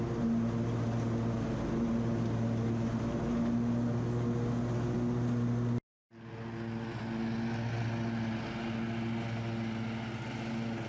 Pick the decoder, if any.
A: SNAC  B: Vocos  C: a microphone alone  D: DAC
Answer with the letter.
C